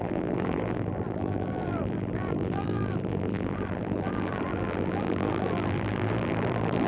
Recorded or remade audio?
remade